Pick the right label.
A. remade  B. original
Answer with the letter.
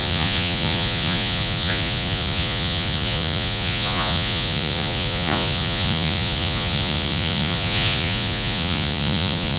A